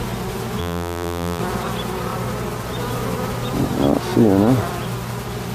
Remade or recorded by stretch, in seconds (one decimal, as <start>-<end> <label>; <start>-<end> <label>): 0.0-0.6 recorded; 0.6-1.4 remade; 1.4-5.5 recorded